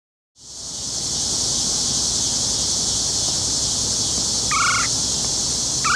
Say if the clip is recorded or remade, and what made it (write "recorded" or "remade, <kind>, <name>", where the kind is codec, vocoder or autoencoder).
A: recorded